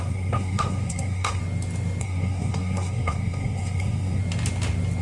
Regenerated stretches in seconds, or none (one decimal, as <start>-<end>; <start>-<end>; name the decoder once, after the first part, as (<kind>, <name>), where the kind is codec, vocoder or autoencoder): 0.0-1.4 (codec, SNAC); 2.0-4.2